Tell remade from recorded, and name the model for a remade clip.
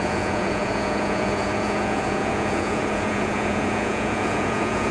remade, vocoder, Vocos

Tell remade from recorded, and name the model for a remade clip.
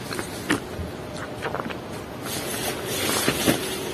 recorded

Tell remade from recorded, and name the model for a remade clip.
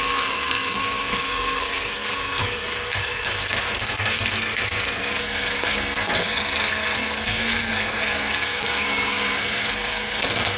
remade, codec, SNAC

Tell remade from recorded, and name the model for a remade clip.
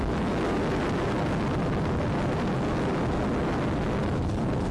recorded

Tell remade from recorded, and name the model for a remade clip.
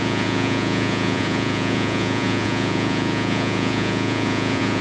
remade, vocoder, Vocos